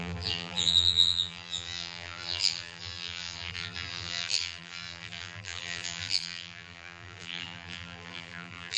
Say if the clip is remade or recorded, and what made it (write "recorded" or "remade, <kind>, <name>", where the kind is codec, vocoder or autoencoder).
remade, vocoder, BigVGAN v2